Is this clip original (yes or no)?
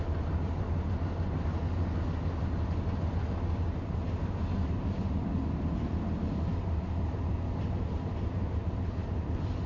yes